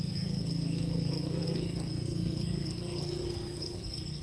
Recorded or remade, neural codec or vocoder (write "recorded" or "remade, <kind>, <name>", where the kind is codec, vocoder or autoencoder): remade, codec, SNAC